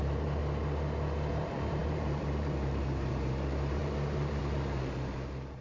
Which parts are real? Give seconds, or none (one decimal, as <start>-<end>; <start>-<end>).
0.4-1.3